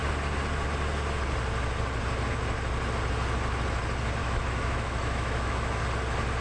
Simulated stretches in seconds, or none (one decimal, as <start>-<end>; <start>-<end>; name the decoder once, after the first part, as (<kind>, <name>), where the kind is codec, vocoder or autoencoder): 4.2-5.8 (autoencoder, DAC-VAE)